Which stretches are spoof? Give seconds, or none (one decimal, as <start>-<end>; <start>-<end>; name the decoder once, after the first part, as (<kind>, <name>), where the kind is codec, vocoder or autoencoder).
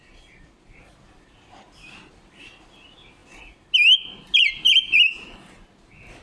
none